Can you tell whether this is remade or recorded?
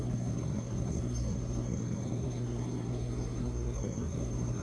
remade